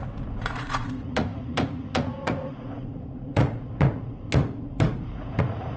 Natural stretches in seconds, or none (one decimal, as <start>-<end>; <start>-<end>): none